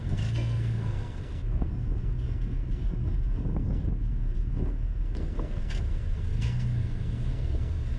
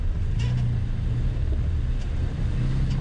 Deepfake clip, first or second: first